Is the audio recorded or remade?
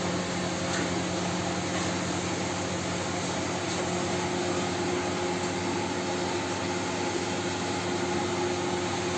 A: recorded